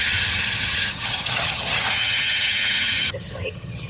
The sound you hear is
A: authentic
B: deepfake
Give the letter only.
B